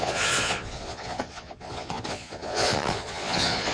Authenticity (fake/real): fake